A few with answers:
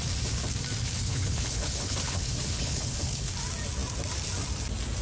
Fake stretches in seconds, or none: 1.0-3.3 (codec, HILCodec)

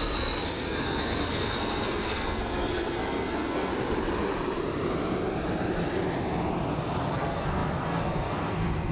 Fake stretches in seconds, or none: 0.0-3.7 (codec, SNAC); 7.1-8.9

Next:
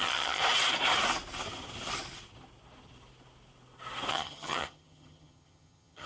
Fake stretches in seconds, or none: 0.0-0.4 (vocoder, HiFi-GAN); 4.1-6.1

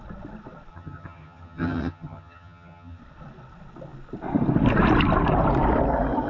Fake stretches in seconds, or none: 0.7-3.0 (vocoder, HiFi-GAN)

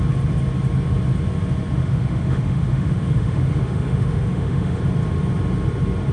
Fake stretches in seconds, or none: 1.8-4.8 (autoencoder, DAC-VAE)

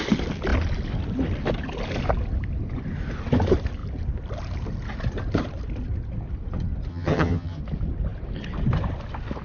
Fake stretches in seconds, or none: 6.9-7.6 (vocoder, HiFi-GAN)

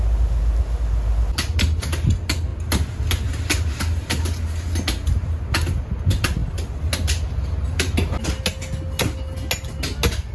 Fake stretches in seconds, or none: none